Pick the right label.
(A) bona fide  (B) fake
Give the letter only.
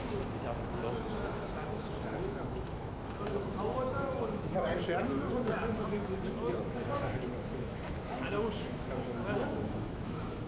B